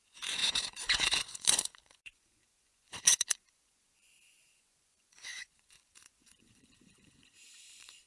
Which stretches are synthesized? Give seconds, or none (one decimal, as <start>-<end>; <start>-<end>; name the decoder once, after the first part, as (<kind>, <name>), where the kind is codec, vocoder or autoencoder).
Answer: 0.0-8.1 (vocoder, Vocos)